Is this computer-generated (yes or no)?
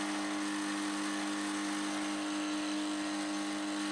no